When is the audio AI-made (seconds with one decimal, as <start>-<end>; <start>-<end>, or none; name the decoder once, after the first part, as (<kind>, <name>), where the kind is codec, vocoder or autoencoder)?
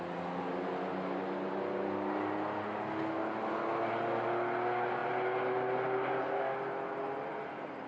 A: none